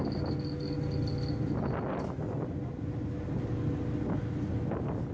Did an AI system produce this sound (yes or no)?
no